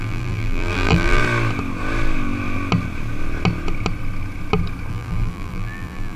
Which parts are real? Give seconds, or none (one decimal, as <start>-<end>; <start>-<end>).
1.2-4.9